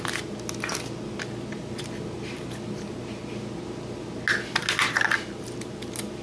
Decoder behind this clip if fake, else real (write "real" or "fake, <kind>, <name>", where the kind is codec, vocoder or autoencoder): real